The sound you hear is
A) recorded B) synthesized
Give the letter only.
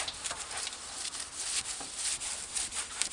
A